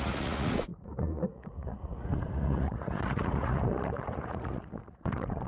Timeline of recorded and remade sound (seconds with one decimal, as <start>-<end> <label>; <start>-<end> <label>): 0.0-5.5 remade